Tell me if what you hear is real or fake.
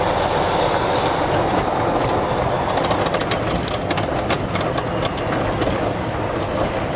real